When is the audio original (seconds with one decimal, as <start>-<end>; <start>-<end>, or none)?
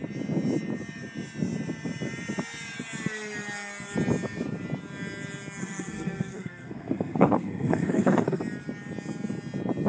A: 0.0-5.6; 8.4-9.9